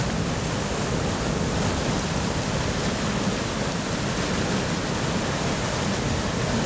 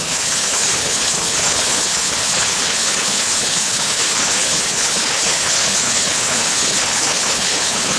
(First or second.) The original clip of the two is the first